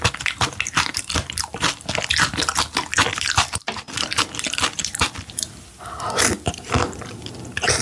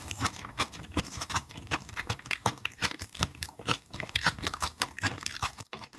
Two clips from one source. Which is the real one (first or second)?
first